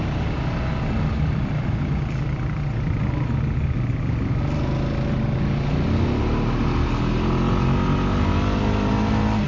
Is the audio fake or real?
real